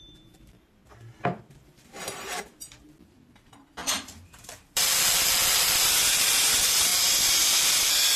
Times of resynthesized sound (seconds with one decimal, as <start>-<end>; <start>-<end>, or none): 0.0-0.8; 1.4-4.9; 5.5-6.9; 7.4-8.2